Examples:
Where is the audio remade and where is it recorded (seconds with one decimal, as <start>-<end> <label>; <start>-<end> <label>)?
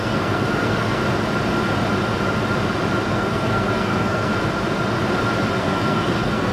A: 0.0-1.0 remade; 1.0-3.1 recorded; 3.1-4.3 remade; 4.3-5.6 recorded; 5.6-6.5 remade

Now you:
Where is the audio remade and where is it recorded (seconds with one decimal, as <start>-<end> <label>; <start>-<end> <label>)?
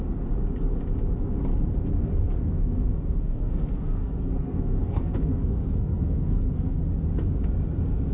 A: 0.0-2.0 recorded; 2.0-6.8 remade; 6.8-8.1 recorded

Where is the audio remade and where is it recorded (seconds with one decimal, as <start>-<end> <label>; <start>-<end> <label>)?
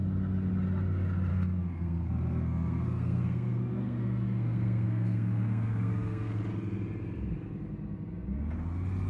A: 0.0-1.3 recorded; 1.3-6.4 remade; 6.4-9.1 recorded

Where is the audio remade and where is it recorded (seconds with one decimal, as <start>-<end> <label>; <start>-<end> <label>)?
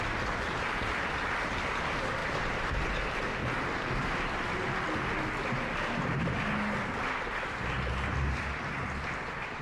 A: 0.0-9.6 recorded